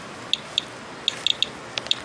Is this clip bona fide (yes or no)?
yes